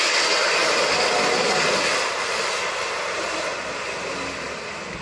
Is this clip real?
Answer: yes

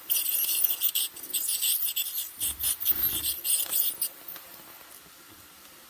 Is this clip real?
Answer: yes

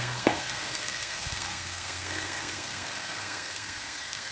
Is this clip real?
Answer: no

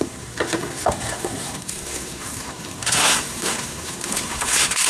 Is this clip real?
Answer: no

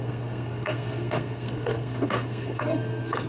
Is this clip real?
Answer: no